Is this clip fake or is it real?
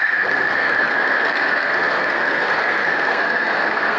fake